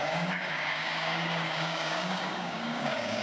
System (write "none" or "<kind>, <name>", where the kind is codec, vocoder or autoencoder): codec, DAC